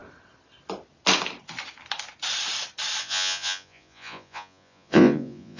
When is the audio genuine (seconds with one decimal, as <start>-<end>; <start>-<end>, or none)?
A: 0.0-3.0